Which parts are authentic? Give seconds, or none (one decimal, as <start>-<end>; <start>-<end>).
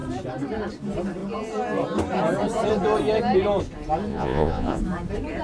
0.0-4.1; 4.8-5.4